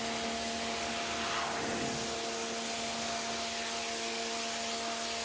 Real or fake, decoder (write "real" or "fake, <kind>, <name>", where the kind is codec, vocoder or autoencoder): real